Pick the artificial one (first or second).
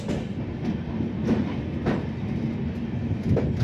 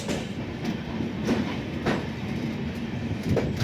second